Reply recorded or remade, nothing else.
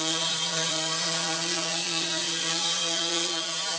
remade